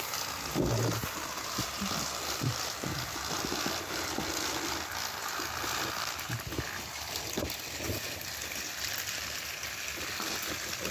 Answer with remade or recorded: recorded